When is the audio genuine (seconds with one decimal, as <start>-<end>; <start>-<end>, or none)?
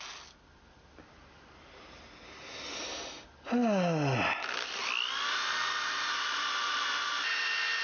0.0-7.8